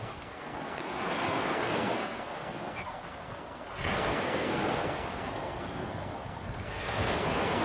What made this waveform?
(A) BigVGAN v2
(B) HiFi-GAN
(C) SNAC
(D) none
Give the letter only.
C